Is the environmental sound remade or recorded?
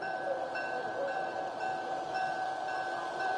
remade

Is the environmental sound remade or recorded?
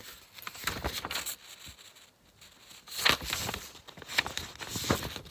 recorded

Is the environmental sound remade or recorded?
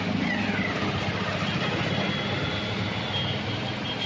recorded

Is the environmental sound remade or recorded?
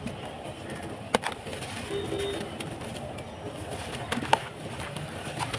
recorded